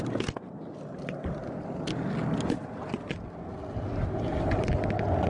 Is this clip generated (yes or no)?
no